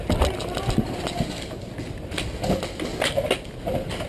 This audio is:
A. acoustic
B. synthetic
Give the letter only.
A